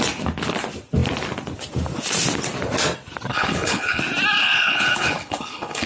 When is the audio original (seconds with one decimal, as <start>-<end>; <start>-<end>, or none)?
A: 0.0-3.3; 4.0-4.4